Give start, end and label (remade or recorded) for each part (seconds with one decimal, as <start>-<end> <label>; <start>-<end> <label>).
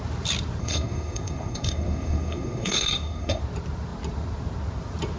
0.0-0.6 recorded; 0.6-3.4 remade; 3.4-5.2 recorded